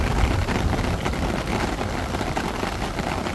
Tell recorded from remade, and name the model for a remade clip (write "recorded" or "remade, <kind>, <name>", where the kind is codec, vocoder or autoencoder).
recorded